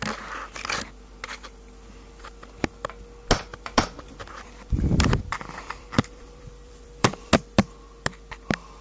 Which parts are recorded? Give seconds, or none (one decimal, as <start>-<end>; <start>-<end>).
0.0-3.5; 7.3-8.8